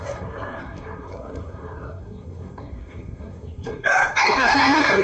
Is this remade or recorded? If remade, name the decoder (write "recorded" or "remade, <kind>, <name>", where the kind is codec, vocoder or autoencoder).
remade, codec, SNAC